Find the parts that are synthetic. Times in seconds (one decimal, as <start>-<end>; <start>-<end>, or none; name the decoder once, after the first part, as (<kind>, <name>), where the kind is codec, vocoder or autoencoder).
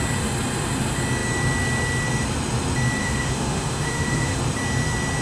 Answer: 3.0-4.4 (autoencoder, DAC-VAE)